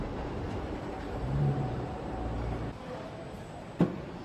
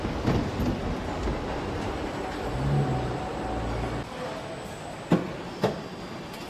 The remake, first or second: first